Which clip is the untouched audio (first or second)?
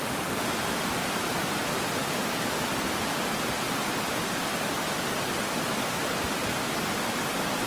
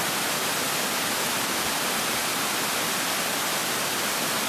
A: second